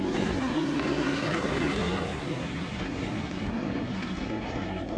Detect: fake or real fake